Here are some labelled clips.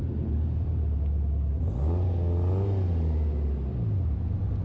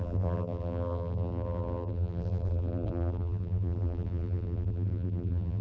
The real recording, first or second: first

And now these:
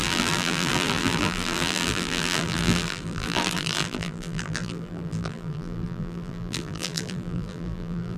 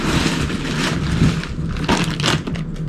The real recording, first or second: second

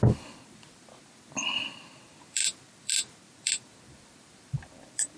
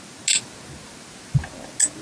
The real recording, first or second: second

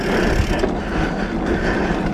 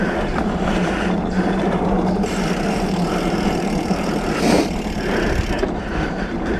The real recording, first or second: first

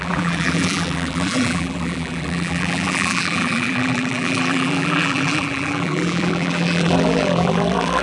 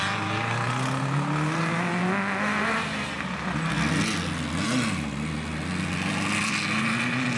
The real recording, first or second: second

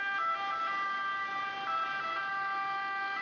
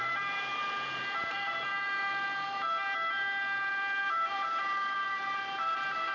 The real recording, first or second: first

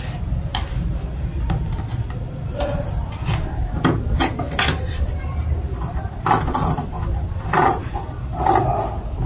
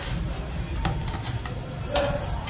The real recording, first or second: second